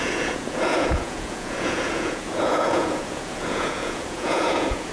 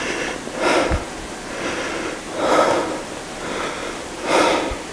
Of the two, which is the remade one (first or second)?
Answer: first